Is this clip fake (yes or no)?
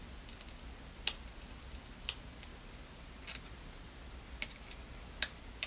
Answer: no